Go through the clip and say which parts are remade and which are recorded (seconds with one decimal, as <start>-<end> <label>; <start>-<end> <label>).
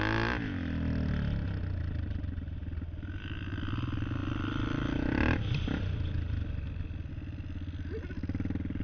0.0-8.8 recorded